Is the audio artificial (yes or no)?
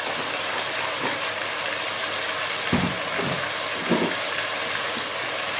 no